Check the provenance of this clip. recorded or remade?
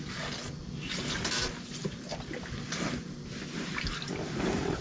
recorded